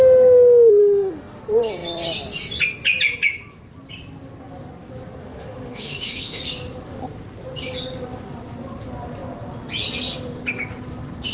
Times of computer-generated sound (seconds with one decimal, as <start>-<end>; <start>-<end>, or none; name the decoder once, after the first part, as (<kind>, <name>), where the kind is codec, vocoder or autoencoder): 0.8-1.4 (autoencoder, DAC-VAE); 5.2-6.4